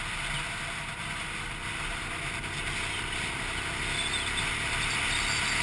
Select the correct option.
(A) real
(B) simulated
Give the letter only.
A